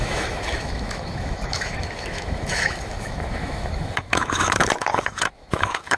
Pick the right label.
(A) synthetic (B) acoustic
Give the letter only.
A